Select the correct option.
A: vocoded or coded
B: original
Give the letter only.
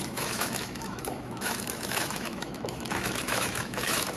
A